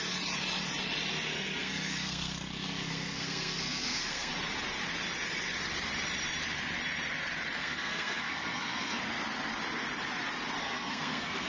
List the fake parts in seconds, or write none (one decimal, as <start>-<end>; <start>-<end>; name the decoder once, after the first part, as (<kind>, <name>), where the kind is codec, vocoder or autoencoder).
1.3-4.3 (codec, SNAC); 7.6-9.0; 10.6-11.5